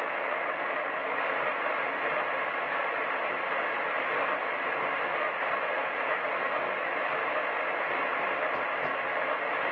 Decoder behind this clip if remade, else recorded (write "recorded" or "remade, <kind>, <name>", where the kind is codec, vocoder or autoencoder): recorded